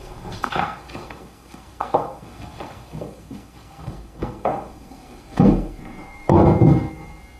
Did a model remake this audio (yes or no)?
yes